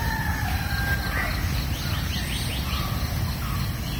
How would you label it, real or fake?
real